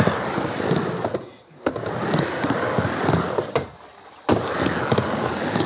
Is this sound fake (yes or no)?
no